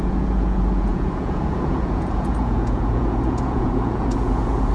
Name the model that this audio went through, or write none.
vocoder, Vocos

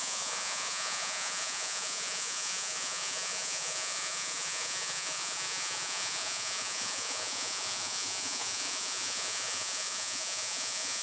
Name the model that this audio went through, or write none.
vocoder, Vocos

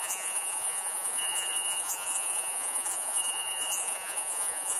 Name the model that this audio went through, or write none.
vocoder, Vocos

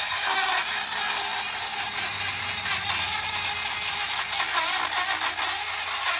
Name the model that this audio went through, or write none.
none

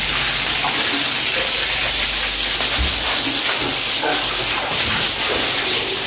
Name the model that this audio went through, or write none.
none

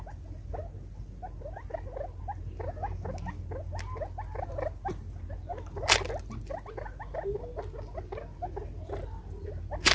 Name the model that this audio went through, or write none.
none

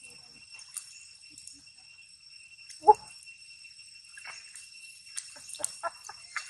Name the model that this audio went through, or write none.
none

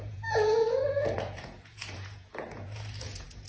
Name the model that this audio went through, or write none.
vocoder, Vocos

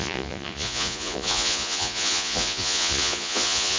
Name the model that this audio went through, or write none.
vocoder, Vocos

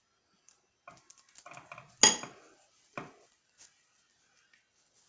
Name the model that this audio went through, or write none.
none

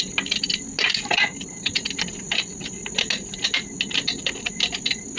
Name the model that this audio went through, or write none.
none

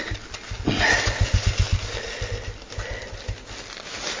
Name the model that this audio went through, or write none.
none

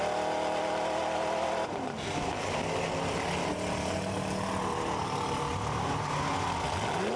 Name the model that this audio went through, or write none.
none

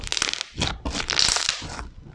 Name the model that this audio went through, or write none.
none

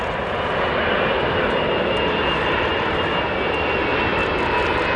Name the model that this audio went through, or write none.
none